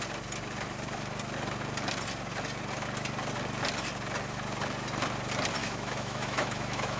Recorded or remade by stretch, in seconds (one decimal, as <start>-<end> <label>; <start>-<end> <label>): 0.0-5.6 recorded; 5.6-7.0 remade